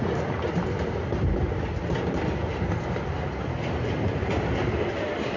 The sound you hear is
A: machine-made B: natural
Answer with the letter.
B